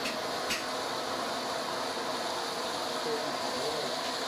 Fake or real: real